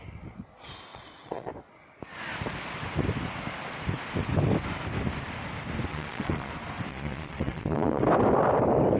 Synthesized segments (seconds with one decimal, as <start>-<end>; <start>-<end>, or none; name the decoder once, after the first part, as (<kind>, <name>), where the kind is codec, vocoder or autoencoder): 0.9-1.5 (vocoder, Vocos); 5.9-6.5; 6.9-8.0